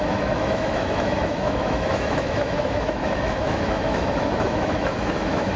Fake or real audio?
fake